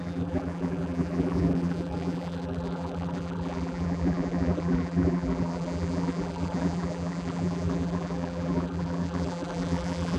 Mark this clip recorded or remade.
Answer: remade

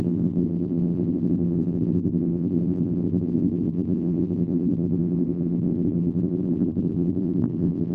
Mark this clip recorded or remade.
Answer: remade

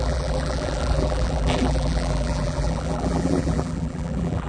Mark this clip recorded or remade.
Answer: remade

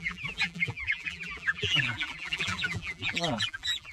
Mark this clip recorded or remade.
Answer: remade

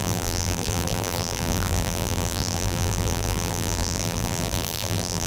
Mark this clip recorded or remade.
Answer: remade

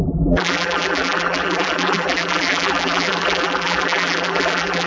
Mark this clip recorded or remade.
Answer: remade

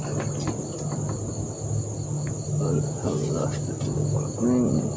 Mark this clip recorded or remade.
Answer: recorded